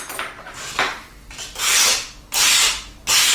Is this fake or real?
real